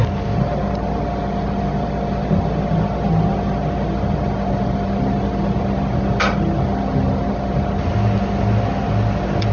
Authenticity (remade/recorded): recorded